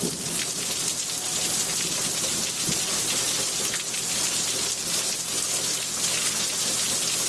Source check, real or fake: real